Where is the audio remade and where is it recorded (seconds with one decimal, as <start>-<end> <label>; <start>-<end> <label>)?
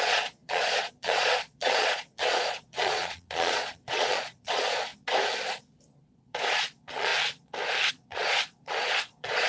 0.0-4.9 remade; 4.9-6.0 recorded; 6.0-7.1 remade; 7.1-7.9 recorded; 7.9-9.5 remade